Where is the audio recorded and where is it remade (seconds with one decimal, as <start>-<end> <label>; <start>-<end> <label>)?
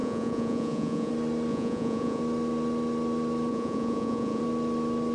0.0-1.1 remade; 1.1-1.5 recorded; 1.5-2.2 remade; 2.2-3.5 recorded; 3.5-4.4 remade; 4.4-5.1 recorded